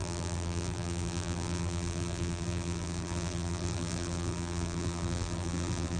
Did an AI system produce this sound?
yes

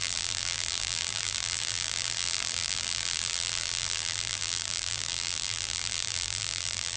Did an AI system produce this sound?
yes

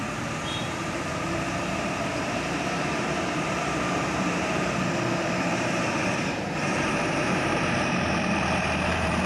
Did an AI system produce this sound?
yes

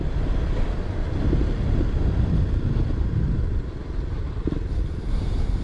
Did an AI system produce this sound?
no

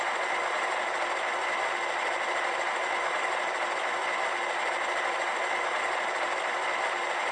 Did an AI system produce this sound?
no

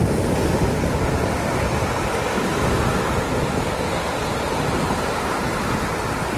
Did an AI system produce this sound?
no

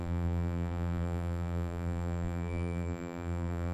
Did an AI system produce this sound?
yes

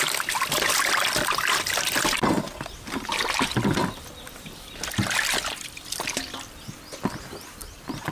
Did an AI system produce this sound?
no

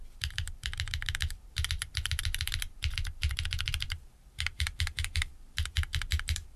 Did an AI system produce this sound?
yes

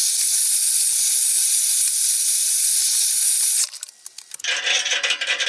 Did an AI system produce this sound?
no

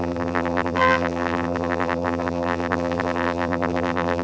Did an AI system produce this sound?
yes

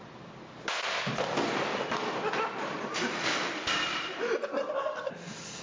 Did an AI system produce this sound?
yes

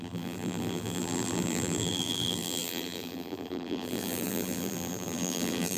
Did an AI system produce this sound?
yes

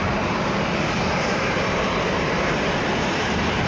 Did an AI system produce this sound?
yes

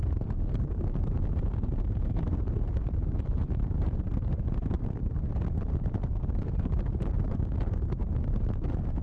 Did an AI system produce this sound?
yes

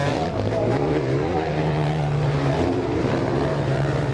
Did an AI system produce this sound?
yes